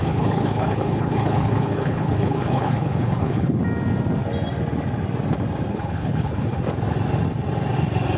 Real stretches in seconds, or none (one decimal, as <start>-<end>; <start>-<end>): 3.6-5.7; 6.6-8.2

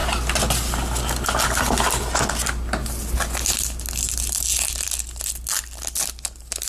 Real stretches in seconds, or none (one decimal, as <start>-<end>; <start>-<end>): 0.0-6.7

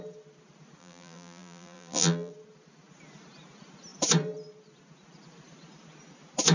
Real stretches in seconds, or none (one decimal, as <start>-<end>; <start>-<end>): 0.0-0.8; 2.3-6.5

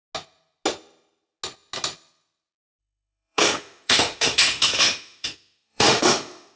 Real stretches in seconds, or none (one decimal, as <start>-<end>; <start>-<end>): 0.0-2.8

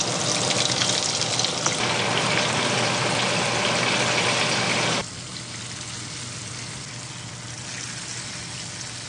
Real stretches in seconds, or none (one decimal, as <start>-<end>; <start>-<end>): 0.0-9.1

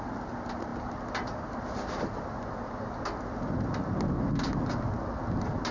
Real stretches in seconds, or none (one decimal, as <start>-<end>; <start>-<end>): 0.0-5.7

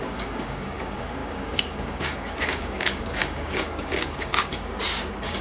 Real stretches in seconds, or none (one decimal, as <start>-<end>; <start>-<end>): none

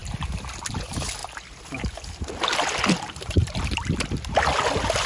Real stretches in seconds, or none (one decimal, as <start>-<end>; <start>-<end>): 0.0-0.7; 1.2-4.3